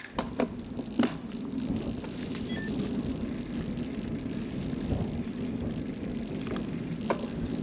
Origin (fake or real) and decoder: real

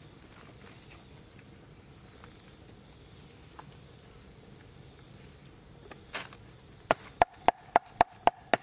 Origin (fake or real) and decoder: real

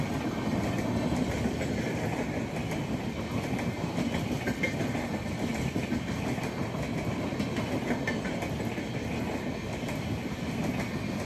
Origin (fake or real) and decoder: real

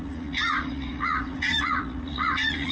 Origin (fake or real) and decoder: fake, vocoder, Vocos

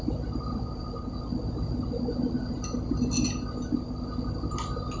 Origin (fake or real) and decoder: real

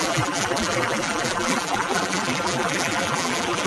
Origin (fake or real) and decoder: fake, vocoder, BigVGAN v2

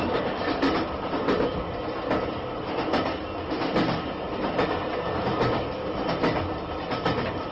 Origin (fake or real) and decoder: real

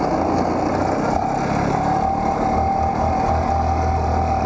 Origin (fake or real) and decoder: real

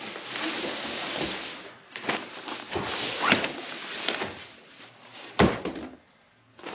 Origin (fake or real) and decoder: real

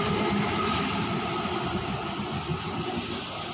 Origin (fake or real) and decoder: real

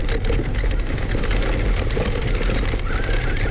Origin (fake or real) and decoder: real